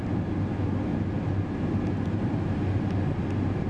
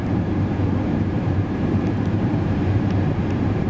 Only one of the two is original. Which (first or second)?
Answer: first